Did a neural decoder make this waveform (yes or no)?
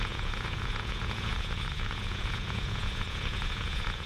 yes